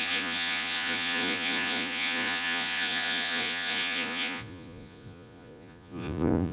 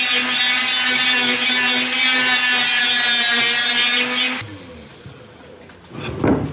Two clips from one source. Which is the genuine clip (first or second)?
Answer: second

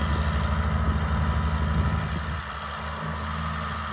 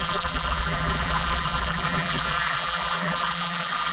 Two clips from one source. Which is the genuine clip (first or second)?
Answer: first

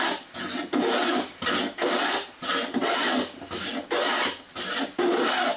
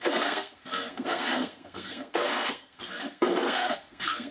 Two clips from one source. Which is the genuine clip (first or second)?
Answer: first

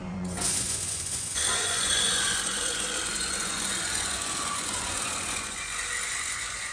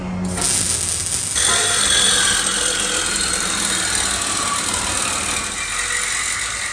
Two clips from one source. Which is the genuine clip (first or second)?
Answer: second